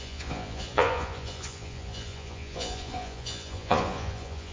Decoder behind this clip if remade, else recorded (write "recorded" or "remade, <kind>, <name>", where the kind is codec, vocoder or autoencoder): remade, vocoder, Vocos